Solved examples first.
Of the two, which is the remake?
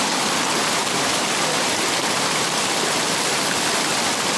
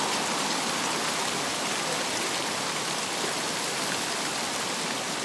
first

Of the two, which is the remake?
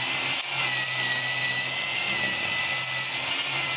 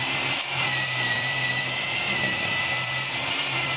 second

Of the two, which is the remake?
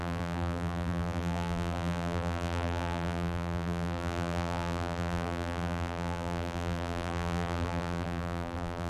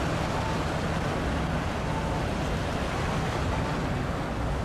first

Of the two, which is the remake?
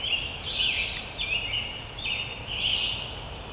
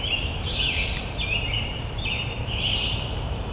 second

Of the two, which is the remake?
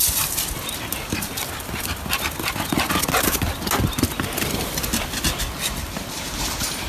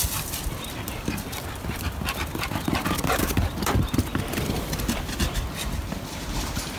second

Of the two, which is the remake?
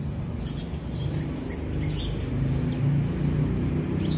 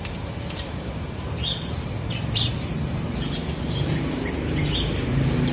second